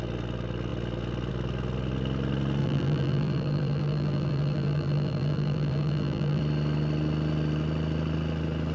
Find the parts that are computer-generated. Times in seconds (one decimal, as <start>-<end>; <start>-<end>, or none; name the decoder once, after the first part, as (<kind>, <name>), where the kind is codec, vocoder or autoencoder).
2.6-6.4 (vocoder, BigVGAN v2)